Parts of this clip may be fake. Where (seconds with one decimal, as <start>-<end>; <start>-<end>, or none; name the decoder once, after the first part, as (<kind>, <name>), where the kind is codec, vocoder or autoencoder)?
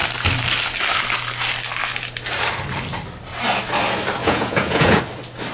4.2-5.0 (vocoder, Vocos)